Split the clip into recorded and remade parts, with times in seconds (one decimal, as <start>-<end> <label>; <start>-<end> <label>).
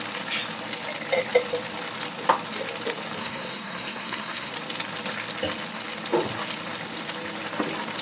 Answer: 0.0-3.2 recorded; 3.2-4.5 remade; 4.5-8.0 recorded